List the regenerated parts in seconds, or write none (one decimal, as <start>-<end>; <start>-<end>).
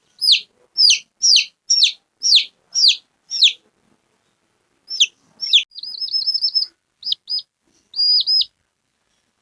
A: none